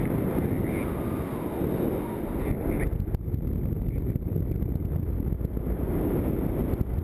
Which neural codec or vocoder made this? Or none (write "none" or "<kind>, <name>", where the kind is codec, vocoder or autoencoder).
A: none